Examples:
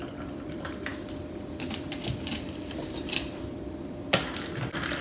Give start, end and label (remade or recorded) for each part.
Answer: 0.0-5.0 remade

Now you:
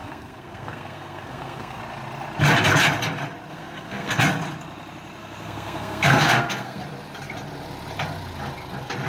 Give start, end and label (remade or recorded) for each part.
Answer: 0.0-1.8 remade; 1.8-3.5 recorded; 3.5-4.2 remade; 4.2-5.2 recorded; 5.2-6.8 remade; 6.8-9.1 recorded

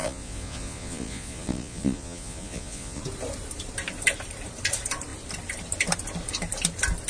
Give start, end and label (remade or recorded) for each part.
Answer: 0.0-3.0 remade; 3.0-7.1 recorded